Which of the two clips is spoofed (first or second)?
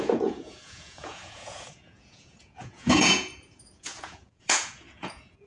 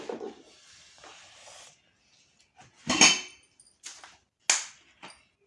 first